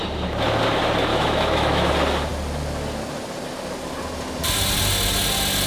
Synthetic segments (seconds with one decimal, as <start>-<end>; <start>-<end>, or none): 1.1-1.9